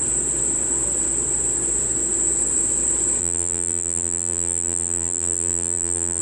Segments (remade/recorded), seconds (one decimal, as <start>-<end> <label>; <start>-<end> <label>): 0.0-3.2 recorded; 3.2-6.2 remade